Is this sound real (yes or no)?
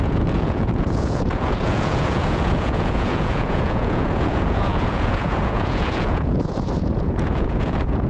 no